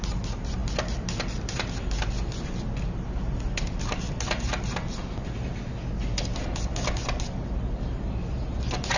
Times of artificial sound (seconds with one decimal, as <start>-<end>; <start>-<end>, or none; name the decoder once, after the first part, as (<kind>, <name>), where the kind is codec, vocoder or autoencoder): none

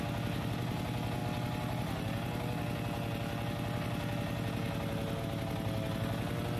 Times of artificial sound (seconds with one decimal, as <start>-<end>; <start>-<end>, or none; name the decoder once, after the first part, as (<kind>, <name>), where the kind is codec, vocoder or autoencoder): none

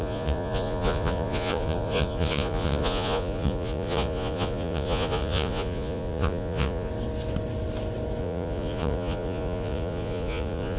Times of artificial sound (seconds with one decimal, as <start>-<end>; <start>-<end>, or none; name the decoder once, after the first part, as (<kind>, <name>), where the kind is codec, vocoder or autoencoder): 0.0-6.9 (vocoder, Vocos); 8.2-10.8

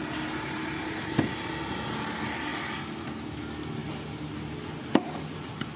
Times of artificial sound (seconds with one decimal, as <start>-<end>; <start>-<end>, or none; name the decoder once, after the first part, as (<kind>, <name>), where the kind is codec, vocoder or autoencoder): none

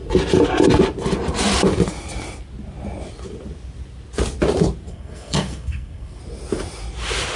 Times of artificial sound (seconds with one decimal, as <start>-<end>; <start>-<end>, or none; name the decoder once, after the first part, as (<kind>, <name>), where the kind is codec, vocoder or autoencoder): 4.9-6.2 (codec, SNAC)

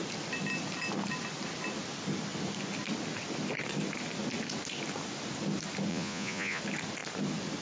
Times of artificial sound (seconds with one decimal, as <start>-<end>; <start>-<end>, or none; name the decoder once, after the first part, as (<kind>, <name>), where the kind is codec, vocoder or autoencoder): 5.9-6.6 (vocoder, Vocos)